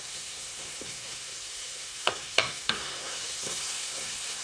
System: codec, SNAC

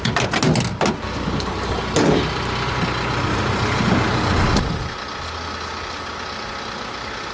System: none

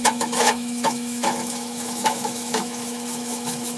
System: autoencoder, DAC-VAE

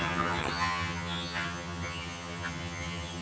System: vocoder, HiFi-GAN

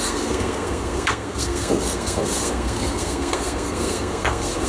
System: codec, SNAC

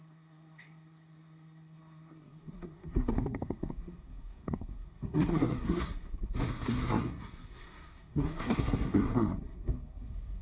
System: codec, SNAC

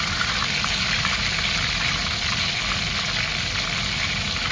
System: none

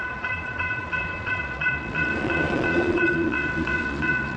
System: vocoder, Vocos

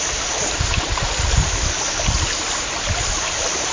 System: none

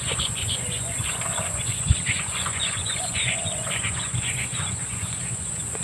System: vocoder, Vocos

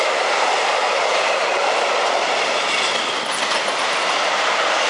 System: none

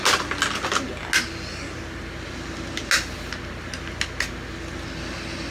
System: none